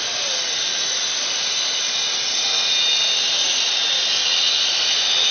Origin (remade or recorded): remade